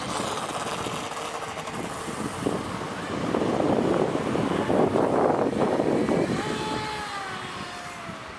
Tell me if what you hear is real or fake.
real